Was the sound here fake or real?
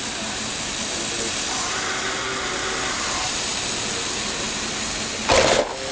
real